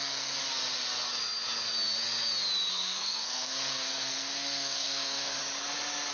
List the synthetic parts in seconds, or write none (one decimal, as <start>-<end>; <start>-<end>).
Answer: 0.0-0.4; 2.7-5.4